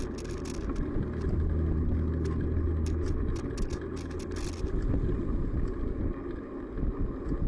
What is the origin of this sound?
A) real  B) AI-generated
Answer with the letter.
A